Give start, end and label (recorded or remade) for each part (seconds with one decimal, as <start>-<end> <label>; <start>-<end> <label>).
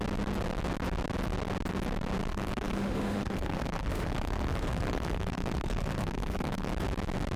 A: 0.0-2.3 recorded; 2.3-6.7 remade; 6.7-7.4 recorded